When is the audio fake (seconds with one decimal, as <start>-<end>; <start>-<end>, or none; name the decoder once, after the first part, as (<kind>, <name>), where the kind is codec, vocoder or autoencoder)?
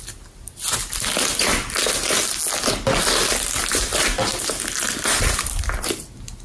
none